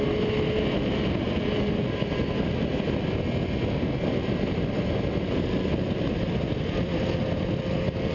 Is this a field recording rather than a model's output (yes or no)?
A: yes